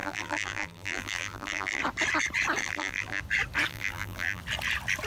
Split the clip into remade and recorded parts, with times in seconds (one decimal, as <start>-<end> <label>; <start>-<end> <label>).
0.0-1.8 remade; 1.8-2.6 recorded; 2.6-3.2 remade; 3.2-3.7 recorded; 3.7-4.4 remade; 4.4-5.1 recorded